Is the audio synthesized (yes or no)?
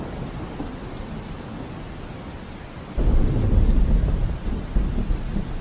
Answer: no